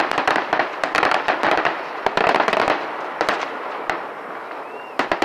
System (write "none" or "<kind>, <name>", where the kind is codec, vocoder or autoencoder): vocoder, BigVGAN v2